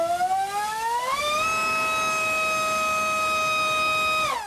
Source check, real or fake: real